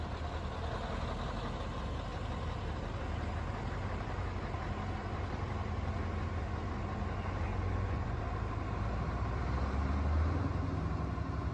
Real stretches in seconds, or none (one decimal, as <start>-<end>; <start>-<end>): 0.0-7.5; 8.2-11.5